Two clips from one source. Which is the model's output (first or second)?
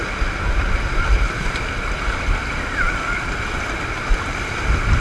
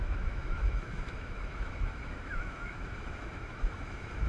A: second